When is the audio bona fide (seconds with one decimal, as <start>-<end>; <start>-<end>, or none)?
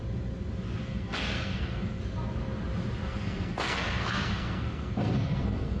0.0-0.8; 2.0-3.0